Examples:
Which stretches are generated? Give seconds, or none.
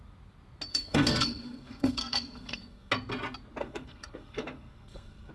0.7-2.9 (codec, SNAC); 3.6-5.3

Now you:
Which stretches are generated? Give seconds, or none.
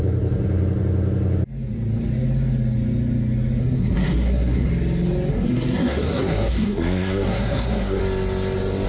3.6-4.7 (codec, SNAC); 5.3-8.0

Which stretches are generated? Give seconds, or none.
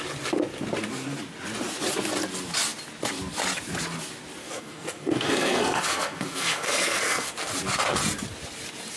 4.4-7.5 (codec, SNAC)